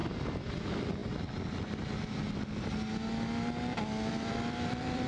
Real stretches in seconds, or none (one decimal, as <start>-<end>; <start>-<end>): 1.0-4.1